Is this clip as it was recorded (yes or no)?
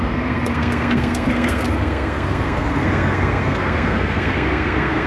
no